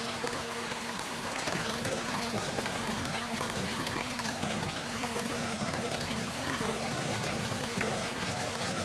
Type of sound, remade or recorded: remade